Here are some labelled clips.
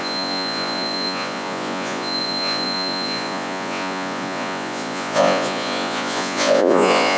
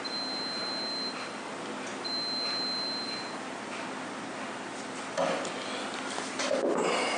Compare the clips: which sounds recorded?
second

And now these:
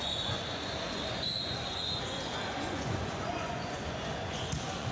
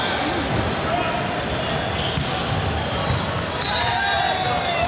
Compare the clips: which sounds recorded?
second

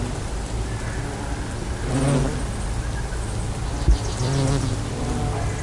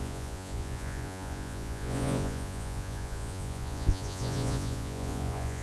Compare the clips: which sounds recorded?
first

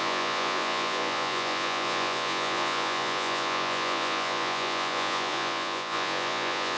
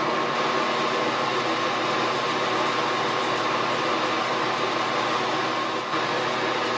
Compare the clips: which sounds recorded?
second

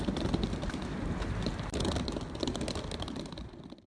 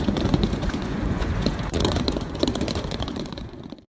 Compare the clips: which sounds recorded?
first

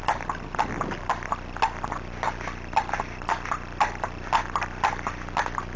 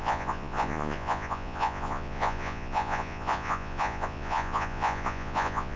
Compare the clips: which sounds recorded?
first